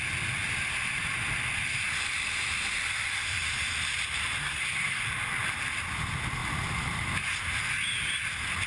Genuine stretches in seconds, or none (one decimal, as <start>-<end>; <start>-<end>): 0.0-4.4; 5.0-8.7